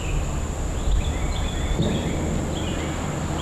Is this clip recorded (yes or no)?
yes